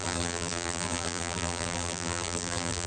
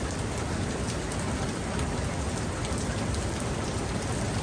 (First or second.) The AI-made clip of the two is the first